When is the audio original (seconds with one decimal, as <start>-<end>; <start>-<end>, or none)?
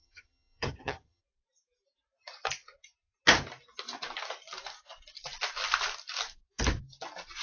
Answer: 1.2-7.4